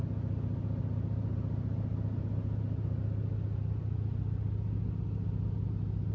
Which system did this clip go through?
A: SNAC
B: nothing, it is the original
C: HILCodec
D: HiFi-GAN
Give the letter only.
B